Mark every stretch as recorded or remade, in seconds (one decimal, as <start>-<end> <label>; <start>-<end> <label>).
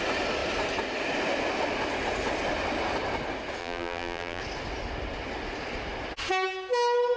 0.0-3.6 recorded; 3.6-4.4 remade; 4.4-7.2 recorded